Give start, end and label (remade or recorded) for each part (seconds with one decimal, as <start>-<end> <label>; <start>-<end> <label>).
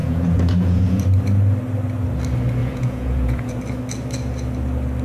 0.0-1.0 remade; 1.0-2.6 recorded; 2.6-3.6 remade; 3.6-5.0 recorded